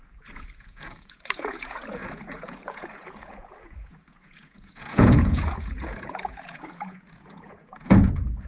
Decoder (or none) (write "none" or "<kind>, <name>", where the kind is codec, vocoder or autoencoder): vocoder, Vocos